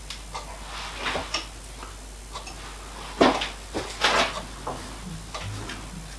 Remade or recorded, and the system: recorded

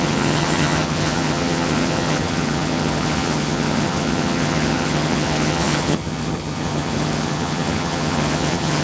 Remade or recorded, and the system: remade, vocoder, HiFi-GAN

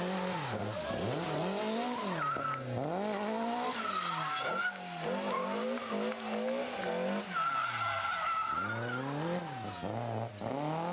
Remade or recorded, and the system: recorded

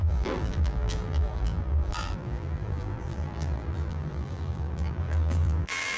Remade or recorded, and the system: remade, vocoder, BigVGAN v2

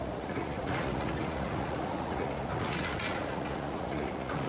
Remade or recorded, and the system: remade, vocoder, Vocos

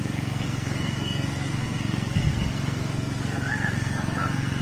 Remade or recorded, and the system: remade, codec, SNAC